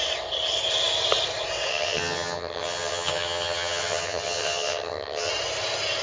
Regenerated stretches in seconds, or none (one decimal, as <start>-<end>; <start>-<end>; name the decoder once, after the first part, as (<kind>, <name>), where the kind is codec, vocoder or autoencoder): 1.7-5.3 (vocoder, HiFi-GAN)